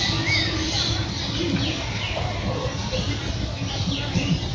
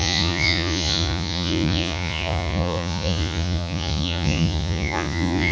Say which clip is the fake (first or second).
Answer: second